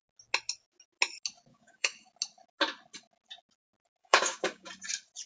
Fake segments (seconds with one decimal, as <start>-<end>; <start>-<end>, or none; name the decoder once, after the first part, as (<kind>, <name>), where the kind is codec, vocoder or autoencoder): 1.5-2.1 (codec, DAC); 4.0-4.7